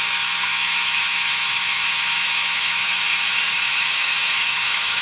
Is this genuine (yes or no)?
no